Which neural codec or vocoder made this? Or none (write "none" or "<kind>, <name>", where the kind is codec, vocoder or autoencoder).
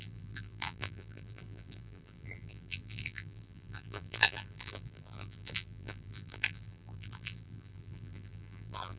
vocoder, BigVGAN v2